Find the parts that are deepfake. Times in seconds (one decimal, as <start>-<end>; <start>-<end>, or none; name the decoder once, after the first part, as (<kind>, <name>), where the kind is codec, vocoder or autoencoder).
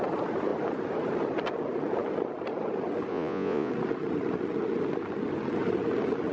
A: 3.1-3.7 (vocoder, Vocos)